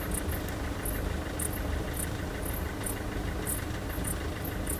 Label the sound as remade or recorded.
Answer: recorded